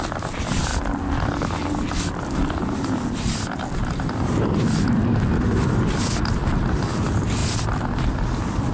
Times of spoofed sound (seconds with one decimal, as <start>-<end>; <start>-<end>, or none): 0.0-0.7; 1.9-8.7